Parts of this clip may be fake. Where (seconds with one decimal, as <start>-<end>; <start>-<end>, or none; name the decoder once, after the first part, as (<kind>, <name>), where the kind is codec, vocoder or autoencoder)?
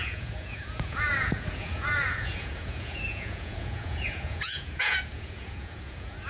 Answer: 0.0-6.3 (vocoder, Vocos)